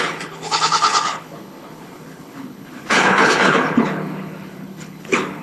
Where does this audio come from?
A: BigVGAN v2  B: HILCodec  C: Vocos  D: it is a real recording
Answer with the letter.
B